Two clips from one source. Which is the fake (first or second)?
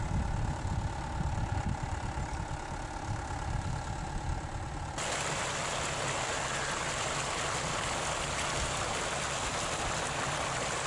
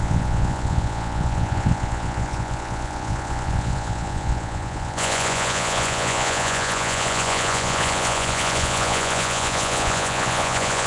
second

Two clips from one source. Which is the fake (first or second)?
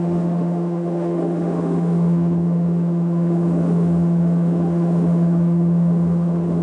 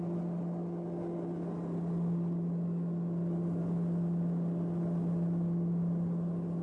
first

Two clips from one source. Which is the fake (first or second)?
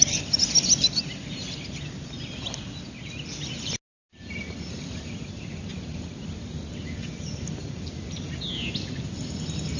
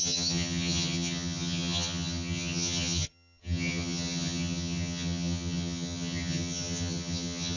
second